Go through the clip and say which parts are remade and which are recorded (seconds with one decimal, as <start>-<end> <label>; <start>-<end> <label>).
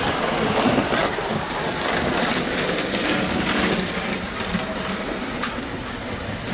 0.0-6.5 recorded